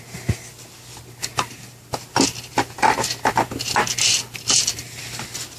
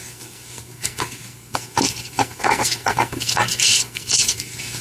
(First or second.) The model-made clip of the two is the second